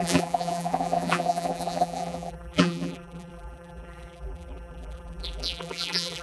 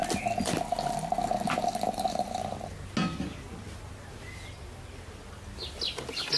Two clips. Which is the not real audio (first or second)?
first